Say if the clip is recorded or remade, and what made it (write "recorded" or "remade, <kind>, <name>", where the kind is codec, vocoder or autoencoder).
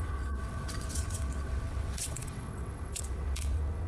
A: remade, vocoder, WaveNeXt